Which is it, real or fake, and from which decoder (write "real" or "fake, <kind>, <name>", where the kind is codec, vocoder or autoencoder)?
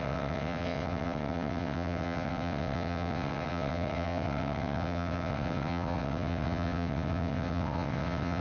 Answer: fake, vocoder, WaveNeXt